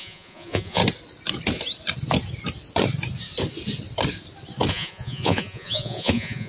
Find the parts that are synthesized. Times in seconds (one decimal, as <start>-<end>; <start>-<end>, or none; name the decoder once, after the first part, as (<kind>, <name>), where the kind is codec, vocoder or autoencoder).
0.0-0.8 (vocoder, Vocos); 4.7-6.5